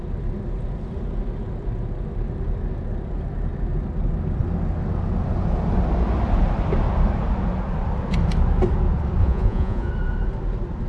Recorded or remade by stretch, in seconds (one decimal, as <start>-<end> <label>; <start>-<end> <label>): 0.0-9.2 recorded; 9.2-9.9 remade; 9.9-10.9 recorded